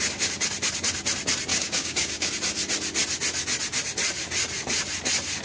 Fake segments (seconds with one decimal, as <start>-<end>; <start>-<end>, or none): 1.5-2.3